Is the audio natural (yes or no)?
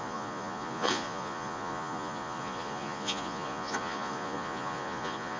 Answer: no